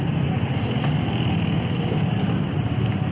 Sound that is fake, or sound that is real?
real